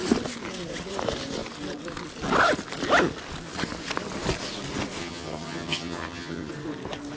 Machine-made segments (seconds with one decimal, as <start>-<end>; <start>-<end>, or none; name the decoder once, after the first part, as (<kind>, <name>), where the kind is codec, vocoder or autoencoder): 5.0-6.5 (vocoder, HiFi-GAN)